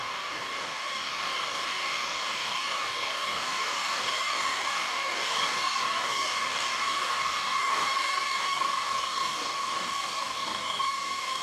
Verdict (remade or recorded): remade